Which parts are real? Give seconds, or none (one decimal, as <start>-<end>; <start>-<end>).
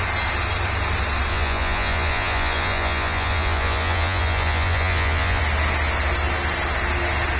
0.0-1.3; 5.4-7.4